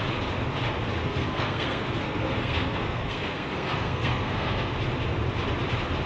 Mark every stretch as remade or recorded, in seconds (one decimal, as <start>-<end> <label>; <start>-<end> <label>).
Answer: 0.0-1.0 recorded; 1.0-4.7 remade; 4.7-6.1 recorded